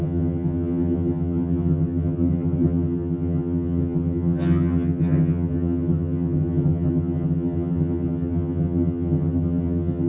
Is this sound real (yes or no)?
no